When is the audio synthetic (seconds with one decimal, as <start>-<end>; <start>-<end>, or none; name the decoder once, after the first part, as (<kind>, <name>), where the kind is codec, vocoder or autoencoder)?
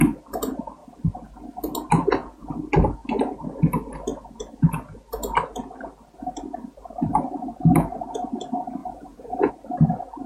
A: 8.8-9.5 (vocoder, Vocos)